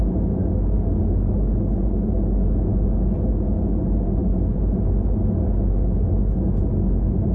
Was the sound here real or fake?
real